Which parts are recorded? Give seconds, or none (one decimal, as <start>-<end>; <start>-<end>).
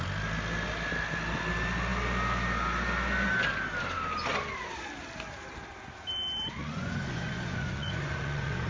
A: 0.0-6.6